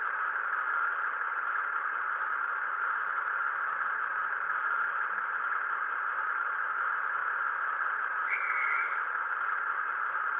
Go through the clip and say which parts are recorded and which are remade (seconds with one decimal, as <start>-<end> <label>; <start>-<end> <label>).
0.0-10.4 recorded